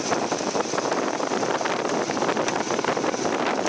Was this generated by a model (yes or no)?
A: no